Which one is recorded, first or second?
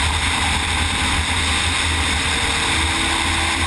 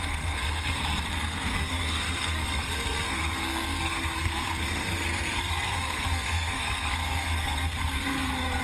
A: first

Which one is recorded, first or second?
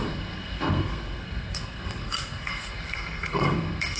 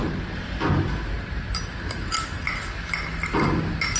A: second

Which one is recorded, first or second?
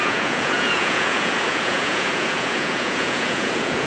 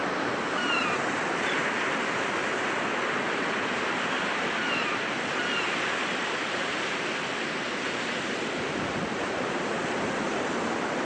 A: second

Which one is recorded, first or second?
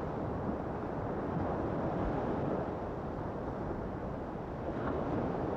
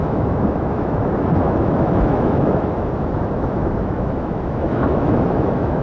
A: first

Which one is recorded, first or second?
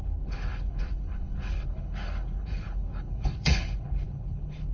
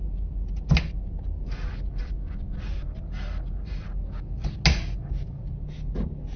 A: second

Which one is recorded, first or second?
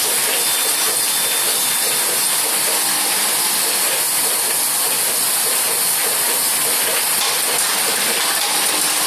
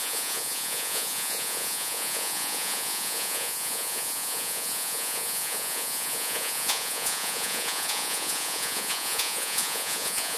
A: first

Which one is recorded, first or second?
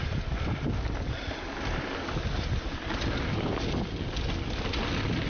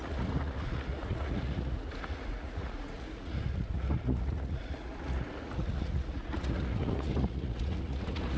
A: first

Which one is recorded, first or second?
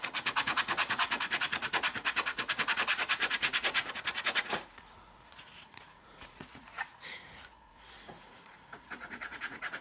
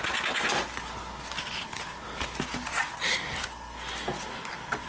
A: second